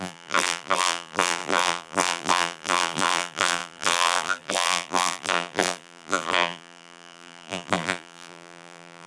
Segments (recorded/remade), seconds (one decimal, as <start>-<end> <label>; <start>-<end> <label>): 0.0-9.1 remade

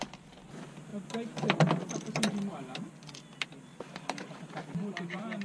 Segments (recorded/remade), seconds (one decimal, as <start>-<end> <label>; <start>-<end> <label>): 0.0-5.4 recorded

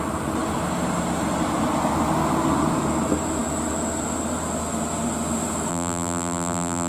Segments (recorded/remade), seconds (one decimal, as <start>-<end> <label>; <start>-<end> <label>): 0.0-5.7 recorded; 5.7-6.9 remade

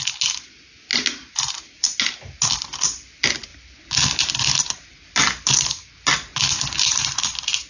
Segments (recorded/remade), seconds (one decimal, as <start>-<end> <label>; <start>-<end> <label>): 0.0-7.7 recorded